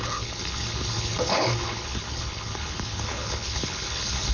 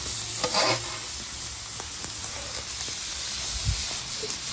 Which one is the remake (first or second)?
first